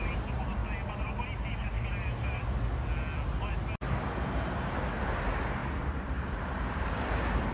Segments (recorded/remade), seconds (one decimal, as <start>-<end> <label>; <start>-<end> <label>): 0.0-0.6 remade; 0.6-5.1 recorded; 5.1-7.5 remade